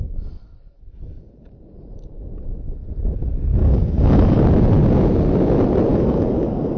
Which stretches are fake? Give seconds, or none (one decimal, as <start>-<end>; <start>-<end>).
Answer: 3.6-4.4; 5.9-6.8